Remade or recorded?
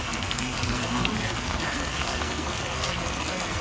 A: remade